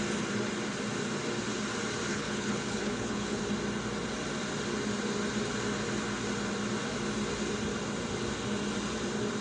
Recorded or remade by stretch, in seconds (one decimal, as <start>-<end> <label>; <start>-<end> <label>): 0.0-2.1 recorded; 2.1-3.4 remade; 3.4-9.4 recorded